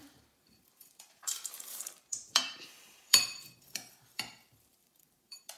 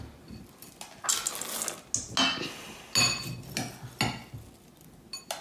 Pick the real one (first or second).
second